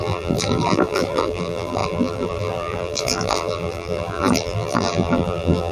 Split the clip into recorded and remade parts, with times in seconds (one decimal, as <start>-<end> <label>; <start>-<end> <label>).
0.0-5.7 remade

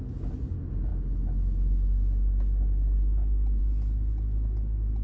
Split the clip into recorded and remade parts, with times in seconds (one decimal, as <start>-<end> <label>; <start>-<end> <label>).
0.0-5.0 recorded

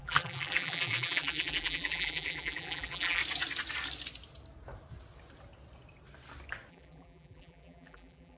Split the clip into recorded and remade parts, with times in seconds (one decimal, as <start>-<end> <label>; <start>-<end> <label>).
0.0-3.2 remade; 3.2-6.7 recorded; 6.7-8.4 remade

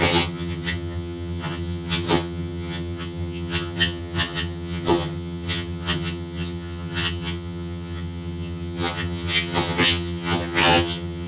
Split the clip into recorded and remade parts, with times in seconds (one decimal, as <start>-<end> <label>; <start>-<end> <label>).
0.0-11.3 remade

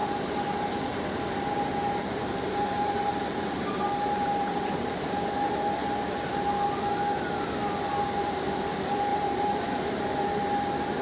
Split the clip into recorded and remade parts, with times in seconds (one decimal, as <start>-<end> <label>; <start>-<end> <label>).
0.0-4.9 remade; 4.9-9.1 recorded; 9.1-10.0 remade; 10.0-11.0 recorded